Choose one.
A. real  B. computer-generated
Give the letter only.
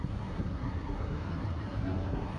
B